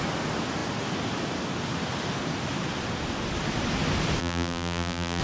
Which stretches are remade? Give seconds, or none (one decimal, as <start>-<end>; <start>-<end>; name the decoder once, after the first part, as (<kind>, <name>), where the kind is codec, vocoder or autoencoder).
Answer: 4.2-5.2 (vocoder, BigVGAN v2)